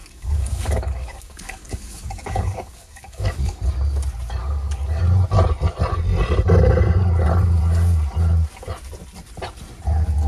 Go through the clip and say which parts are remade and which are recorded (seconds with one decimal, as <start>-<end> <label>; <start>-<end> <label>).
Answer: 0.0-3.6 remade; 3.6-4.4 recorded; 4.4-5.0 remade; 5.0-10.3 recorded